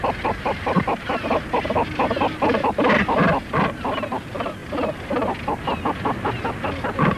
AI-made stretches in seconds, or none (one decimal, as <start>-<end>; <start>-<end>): none